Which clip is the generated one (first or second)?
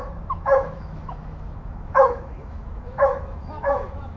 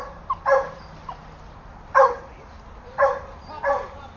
first